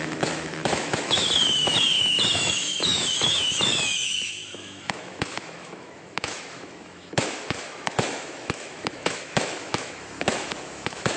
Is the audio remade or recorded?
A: remade